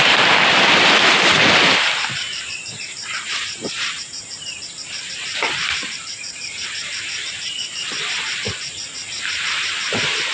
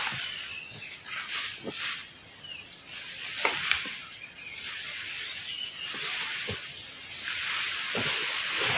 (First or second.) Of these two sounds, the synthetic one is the first